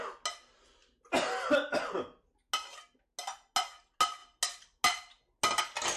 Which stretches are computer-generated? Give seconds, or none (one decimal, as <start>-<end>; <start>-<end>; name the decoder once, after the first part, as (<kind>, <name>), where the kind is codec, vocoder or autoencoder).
none